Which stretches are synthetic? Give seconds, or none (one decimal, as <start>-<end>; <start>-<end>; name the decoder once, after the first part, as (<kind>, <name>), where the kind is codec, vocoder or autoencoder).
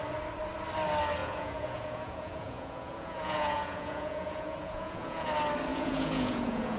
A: 1.2-5.3 (vocoder, Vocos); 5.7-6.8